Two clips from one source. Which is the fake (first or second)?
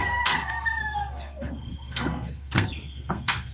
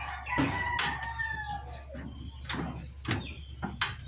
first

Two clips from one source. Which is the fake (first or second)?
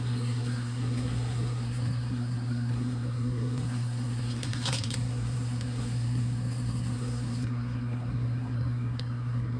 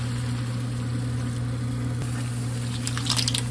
first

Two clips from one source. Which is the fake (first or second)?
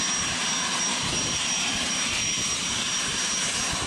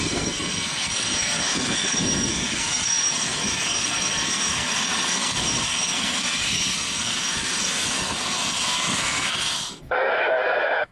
second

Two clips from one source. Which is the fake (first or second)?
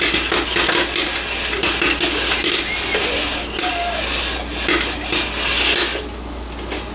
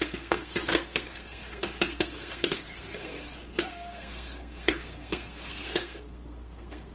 second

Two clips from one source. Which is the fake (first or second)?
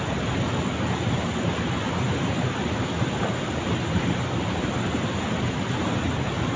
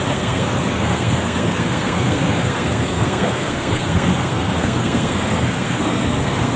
second